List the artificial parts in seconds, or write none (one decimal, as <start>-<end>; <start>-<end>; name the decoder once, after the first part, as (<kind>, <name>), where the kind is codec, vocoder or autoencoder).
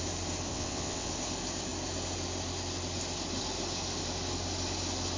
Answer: 0.5-1.1 (vocoder, WaveNeXt)